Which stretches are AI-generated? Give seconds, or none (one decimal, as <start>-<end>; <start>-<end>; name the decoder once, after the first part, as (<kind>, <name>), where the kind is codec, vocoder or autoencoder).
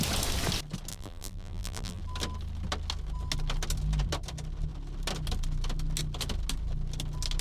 0.9-2.0 (vocoder, BigVGAN v2)